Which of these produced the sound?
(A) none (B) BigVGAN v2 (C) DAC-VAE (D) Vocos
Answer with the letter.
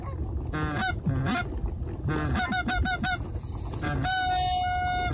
A